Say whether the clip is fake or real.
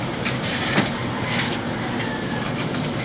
fake